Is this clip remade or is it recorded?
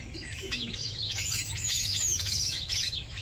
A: remade